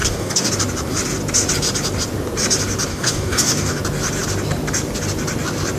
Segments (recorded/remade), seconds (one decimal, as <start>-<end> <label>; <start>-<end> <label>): 0.0-0.5 remade; 0.5-2.9 recorded; 2.9-3.8 remade; 3.8-5.8 recorded